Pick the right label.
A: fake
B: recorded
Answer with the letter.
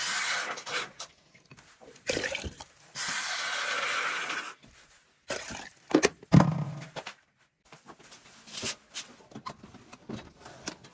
B